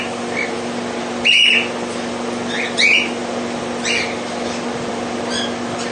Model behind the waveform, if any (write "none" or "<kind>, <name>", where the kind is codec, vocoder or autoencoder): none